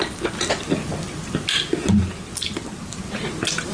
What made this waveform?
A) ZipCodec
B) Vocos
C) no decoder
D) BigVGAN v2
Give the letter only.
C